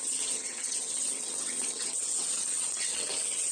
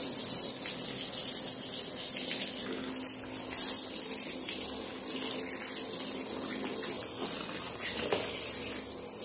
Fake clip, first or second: first